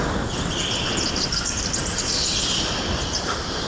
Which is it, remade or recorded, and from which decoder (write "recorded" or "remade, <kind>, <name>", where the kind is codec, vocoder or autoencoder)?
recorded